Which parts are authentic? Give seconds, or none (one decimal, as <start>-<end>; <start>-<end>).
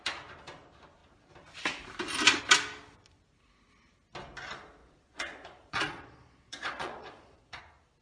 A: 0.0-4.8; 7.6-8.0